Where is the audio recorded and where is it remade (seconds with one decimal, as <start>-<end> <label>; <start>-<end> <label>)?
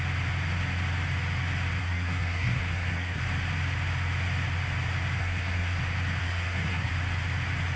0.0-1.8 recorded; 1.8-3.2 remade; 3.2-5.2 recorded; 5.2-5.8 remade; 5.8-6.2 recorded; 6.2-6.9 remade; 6.9-7.8 recorded